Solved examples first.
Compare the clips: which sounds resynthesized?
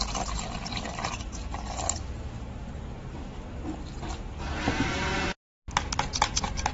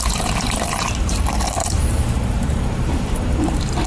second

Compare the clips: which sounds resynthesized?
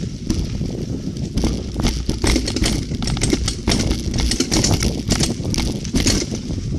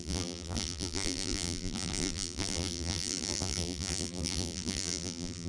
second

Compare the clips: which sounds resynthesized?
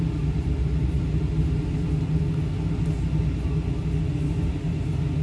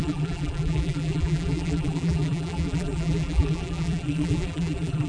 second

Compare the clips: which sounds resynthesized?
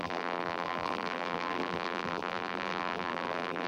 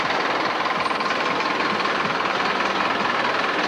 first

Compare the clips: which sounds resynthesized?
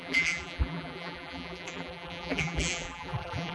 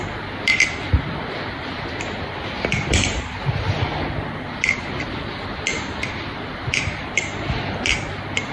first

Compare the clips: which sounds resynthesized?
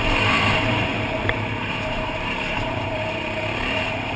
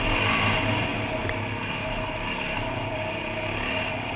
first